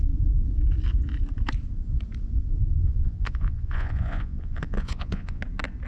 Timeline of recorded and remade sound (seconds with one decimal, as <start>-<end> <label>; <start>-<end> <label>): 0.0-2.7 recorded; 2.7-5.4 remade; 5.4-5.9 recorded